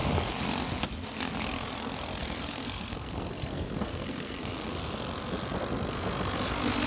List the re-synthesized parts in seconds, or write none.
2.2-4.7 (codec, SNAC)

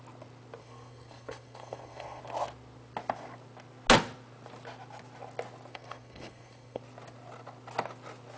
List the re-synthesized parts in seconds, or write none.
0.6-2.2 (codec, SNAC); 5.7-6.8

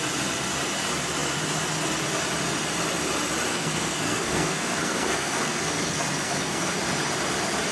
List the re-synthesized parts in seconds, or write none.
3.5-6.8 (codec, SNAC)

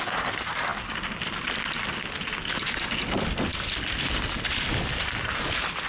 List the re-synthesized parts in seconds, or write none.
none

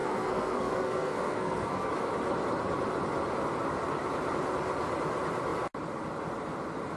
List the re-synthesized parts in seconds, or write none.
0.0-1.9 (codec, SNAC)

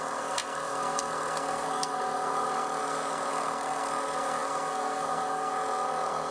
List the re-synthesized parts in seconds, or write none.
0.0-6.3 (codec, SNAC)